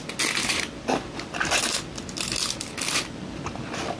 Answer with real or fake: real